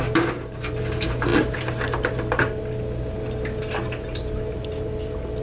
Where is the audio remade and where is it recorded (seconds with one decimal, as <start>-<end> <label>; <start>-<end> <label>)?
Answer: 0.0-5.4 recorded